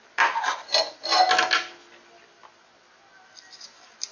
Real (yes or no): yes